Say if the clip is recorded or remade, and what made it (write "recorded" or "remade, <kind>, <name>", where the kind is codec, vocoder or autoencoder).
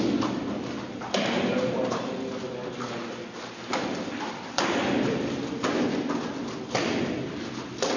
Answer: recorded